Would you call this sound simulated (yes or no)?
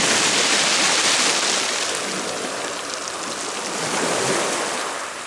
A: no